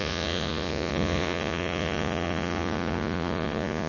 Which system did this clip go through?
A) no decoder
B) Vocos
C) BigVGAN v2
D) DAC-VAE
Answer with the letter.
B